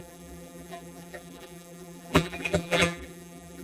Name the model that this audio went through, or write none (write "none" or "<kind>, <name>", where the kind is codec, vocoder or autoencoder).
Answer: vocoder, BigVGAN v2